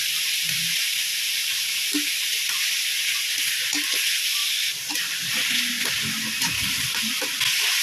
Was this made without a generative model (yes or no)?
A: yes